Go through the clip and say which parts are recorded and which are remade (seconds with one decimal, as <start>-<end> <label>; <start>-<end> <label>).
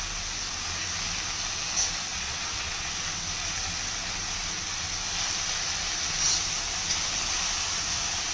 0.0-2.1 recorded; 2.1-2.9 remade; 2.9-8.3 recorded